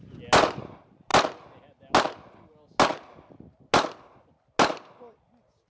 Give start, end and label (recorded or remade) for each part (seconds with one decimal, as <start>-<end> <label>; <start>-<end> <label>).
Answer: 0.0-5.7 recorded

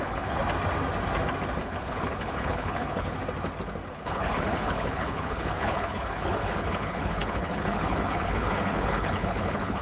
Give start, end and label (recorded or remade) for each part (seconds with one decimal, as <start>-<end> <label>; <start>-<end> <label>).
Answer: 0.0-0.4 remade; 0.4-1.6 recorded; 1.6-3.2 remade; 3.2-3.9 recorded; 3.9-9.8 remade

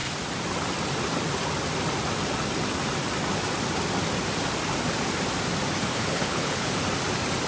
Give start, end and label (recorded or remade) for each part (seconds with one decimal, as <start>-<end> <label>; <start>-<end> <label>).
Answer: 0.0-5.9 recorded; 5.9-6.7 remade; 6.7-7.5 recorded

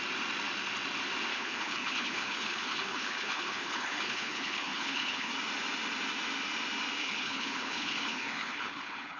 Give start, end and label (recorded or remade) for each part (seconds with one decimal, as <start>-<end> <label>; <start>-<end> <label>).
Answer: 0.0-1.3 recorded; 1.3-5.3 remade; 5.3-7.0 recorded; 7.0-9.2 remade

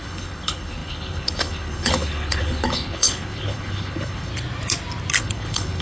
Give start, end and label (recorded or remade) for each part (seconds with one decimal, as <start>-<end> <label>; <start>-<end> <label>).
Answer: 0.0-4.3 remade; 4.3-5.2 recorded; 5.2-5.8 remade

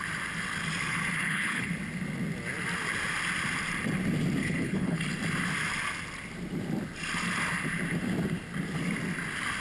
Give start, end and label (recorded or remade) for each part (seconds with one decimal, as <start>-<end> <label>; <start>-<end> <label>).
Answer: 0.0-1.2 recorded; 1.2-1.7 remade; 1.7-4.4 recorded; 4.4-5.0 remade; 5.0-9.6 recorded